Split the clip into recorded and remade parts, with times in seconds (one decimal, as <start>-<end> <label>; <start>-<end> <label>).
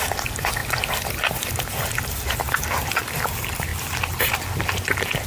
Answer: 0.0-5.3 recorded